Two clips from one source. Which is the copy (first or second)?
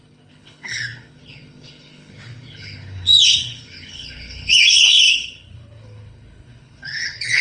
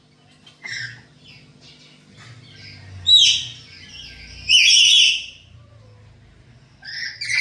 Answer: first